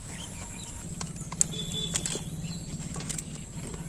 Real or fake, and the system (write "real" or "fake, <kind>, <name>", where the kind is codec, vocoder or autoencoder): real